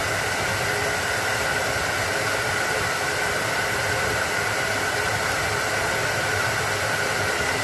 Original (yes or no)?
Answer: yes